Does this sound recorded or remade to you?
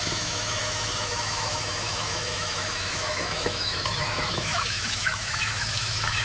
remade